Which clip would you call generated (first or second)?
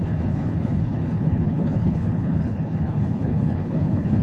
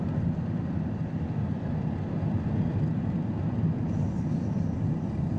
first